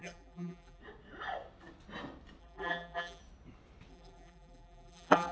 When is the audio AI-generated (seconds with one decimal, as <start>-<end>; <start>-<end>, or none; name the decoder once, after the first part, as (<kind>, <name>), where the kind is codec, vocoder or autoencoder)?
0.0-0.8 (vocoder, BigVGAN v2); 2.4-3.2; 3.9-5.3